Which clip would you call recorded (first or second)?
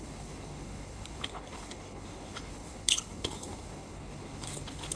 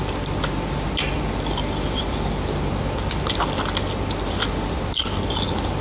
second